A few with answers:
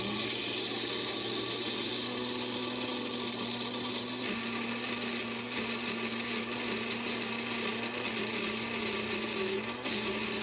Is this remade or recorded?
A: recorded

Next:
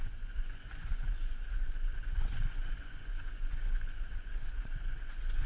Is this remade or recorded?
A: remade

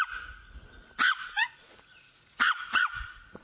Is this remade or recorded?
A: remade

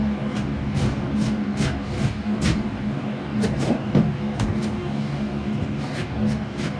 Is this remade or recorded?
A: remade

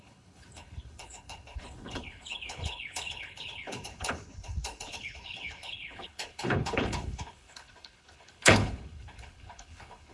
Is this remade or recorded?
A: remade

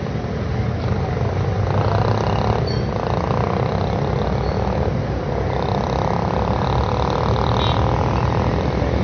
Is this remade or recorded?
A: recorded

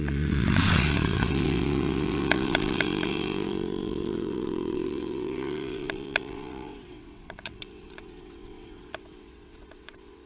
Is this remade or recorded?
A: remade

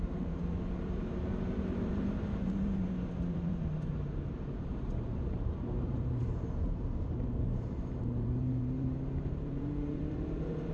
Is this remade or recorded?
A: remade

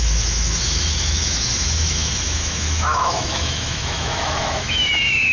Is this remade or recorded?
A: remade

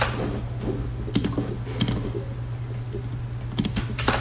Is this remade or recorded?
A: recorded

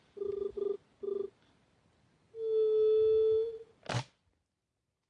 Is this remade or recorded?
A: recorded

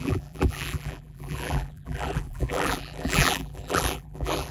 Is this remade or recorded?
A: remade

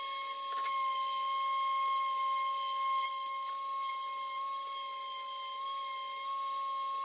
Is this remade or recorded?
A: recorded